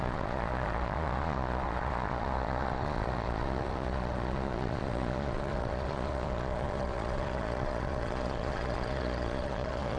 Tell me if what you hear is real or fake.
fake